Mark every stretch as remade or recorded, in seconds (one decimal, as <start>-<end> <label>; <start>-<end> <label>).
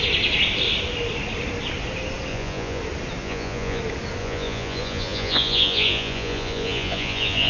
0.0-2.3 recorded; 2.3-2.8 remade; 2.8-3.2 recorded; 3.2-3.8 remade; 3.8-4.2 recorded; 4.2-7.5 remade